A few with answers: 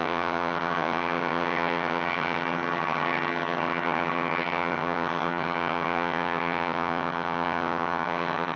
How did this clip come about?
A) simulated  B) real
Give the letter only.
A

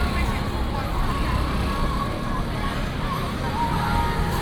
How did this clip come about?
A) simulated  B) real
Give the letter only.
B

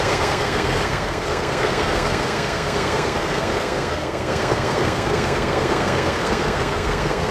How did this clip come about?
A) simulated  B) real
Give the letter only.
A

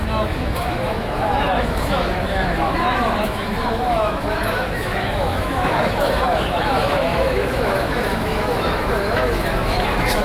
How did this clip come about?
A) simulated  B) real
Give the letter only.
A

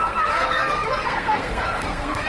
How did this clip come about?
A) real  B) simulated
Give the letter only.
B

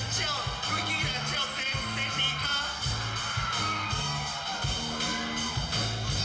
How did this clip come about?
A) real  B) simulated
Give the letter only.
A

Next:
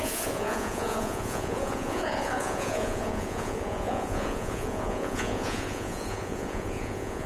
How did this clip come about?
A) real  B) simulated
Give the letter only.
B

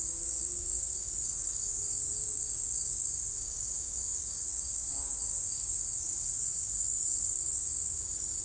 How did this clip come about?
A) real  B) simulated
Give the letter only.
B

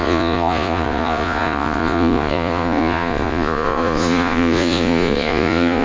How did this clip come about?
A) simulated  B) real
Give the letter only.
A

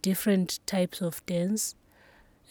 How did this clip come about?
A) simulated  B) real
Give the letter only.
B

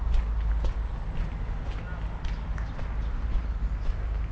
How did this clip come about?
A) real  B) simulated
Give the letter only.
A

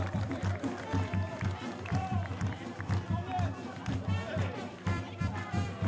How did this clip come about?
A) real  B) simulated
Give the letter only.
B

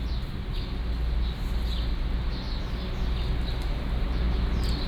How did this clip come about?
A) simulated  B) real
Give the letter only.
B